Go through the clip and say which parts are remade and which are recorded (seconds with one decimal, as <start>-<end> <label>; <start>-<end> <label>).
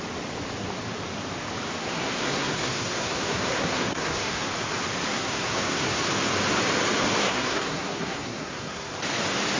0.0-1.8 recorded; 1.8-4.5 remade; 4.5-5.1 recorded; 5.1-6.0 remade; 6.0-7.2 recorded; 7.2-8.9 remade; 8.9-9.6 recorded